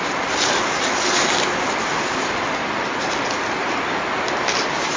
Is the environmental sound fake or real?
real